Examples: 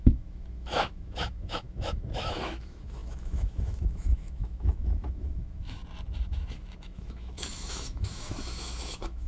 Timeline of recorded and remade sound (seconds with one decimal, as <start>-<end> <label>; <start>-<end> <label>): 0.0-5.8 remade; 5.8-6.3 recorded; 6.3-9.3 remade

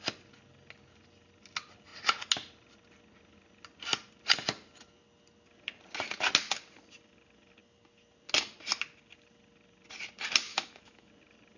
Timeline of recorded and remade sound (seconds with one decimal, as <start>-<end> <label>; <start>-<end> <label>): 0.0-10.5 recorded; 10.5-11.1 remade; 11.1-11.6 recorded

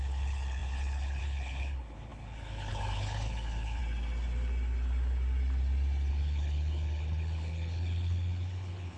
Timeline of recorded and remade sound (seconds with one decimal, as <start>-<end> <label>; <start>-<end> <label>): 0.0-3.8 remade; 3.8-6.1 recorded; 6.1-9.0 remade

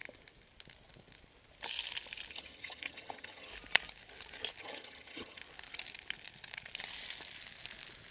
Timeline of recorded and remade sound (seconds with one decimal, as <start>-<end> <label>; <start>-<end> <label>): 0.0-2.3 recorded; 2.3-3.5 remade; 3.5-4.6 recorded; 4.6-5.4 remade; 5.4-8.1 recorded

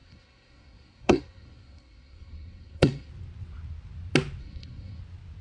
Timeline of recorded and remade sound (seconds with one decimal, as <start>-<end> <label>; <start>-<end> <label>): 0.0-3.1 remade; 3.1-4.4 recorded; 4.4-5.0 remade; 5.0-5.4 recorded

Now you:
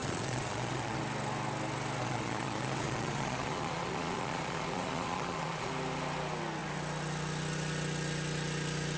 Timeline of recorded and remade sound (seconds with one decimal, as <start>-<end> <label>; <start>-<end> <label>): 0.0-1.0 remade; 1.0-2.0 recorded; 2.0-5.7 remade; 5.7-9.0 recorded

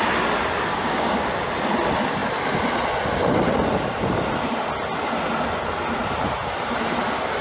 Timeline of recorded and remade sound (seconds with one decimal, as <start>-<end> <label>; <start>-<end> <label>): 0.0-0.7 recorded; 0.7-1.3 remade; 1.3-7.4 recorded